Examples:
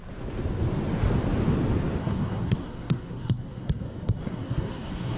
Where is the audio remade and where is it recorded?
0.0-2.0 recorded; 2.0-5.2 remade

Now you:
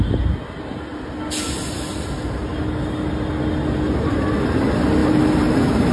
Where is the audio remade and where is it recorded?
0.0-5.0 recorded; 5.0-5.9 remade

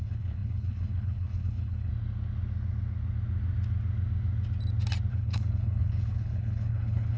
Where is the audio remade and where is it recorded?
0.0-1.9 remade; 1.9-5.1 recorded; 5.1-7.2 remade

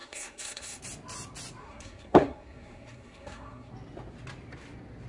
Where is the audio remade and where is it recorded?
0.0-0.8 remade; 0.8-1.6 recorded; 1.6-3.7 remade; 3.7-5.1 recorded

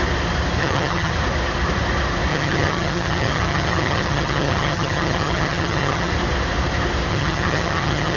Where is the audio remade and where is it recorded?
0.0-0.6 recorded; 0.6-1.1 remade; 1.1-2.3 recorded; 2.3-6.1 remade; 6.1-7.1 recorded; 7.1-8.2 remade

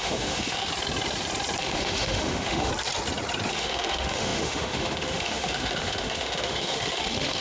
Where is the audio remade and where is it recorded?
0.0-0.7 remade; 0.7-1.6 recorded; 1.6-2.7 remade; 2.7-3.5 recorded; 3.5-7.4 remade

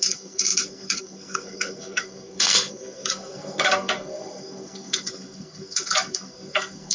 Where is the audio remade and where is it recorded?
0.0-6.9 remade

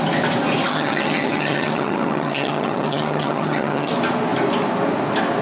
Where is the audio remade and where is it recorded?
0.0-0.7 recorded; 0.7-3.9 remade; 3.9-5.4 recorded